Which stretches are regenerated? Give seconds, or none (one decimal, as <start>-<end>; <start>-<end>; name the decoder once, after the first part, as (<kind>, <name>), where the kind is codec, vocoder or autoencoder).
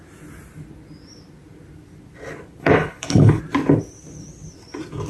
2.6-3.4 (codec, HILCodec)